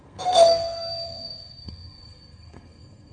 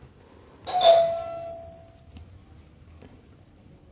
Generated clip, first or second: first